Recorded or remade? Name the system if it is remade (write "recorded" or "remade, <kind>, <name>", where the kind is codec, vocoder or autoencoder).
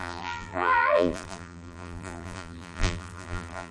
remade, vocoder, BigVGAN v2